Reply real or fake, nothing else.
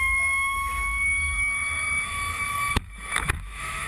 fake